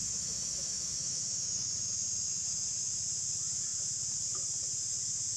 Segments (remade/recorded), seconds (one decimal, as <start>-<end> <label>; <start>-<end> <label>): 0.0-1.7 remade; 1.7-5.4 recorded